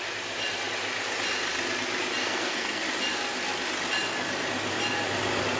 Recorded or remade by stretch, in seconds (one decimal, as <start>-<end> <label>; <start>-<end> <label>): 0.0-2.2 recorded; 2.2-2.8 remade; 2.8-5.6 recorded